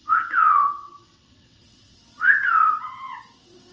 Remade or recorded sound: remade